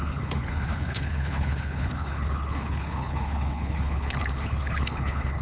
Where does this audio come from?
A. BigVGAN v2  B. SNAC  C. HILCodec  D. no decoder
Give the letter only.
C